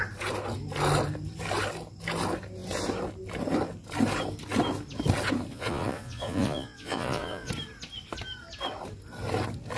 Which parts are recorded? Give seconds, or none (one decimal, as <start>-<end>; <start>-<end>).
0.0-5.5; 7.5-9.8